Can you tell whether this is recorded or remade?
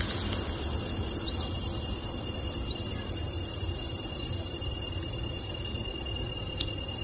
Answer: recorded